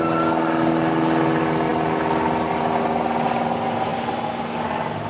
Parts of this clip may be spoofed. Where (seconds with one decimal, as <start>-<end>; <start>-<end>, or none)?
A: none